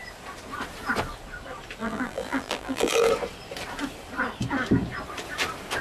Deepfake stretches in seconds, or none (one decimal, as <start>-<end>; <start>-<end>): 1.8-3.1